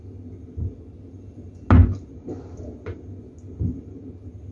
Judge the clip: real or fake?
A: real